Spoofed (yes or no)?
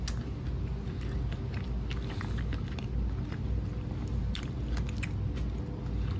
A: no